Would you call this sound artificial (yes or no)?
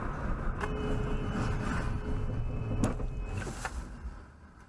no